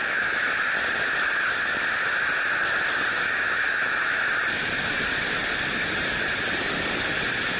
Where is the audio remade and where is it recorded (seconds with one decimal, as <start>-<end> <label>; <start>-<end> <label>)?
0.0-0.6 remade; 0.6-3.1 recorded; 3.1-4.3 remade; 4.3-7.6 recorded